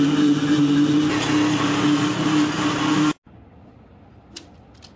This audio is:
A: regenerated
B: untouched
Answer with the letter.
B